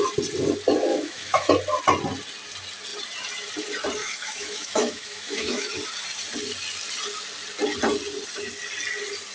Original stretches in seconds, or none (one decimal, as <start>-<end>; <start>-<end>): 0.0-0.9; 1.5-4.0; 5.7-9.3